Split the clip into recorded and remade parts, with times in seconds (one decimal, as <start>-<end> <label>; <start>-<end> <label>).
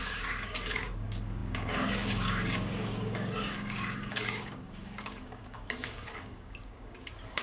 0.0-7.4 remade